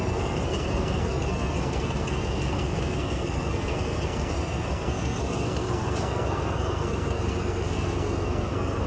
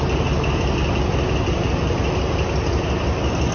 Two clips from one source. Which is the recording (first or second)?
second